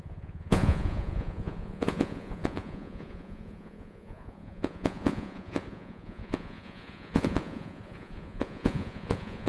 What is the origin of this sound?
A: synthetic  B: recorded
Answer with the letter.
A